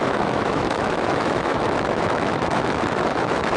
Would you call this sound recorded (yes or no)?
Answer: no